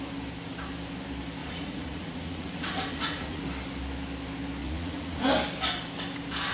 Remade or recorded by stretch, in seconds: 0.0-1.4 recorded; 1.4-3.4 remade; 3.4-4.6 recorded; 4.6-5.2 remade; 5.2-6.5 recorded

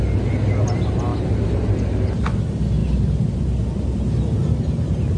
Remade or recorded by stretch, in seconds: 0.0-5.2 recorded

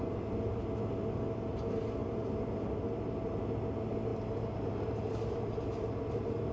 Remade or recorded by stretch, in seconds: 0.0-6.5 recorded

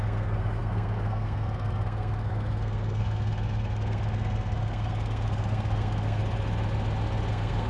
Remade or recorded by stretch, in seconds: 0.0-6.2 remade; 6.2-7.3 recorded; 7.3-7.7 remade

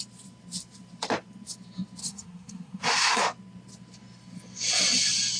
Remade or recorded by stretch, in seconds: 0.0-2.0 recorded; 2.0-3.2 remade; 3.2-5.4 recorded

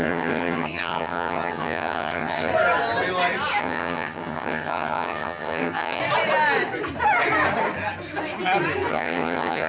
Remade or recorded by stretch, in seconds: 0.0-2.5 remade; 2.5-3.6 recorded; 3.6-6.0 remade; 6.0-8.9 recorded; 8.9-9.7 remade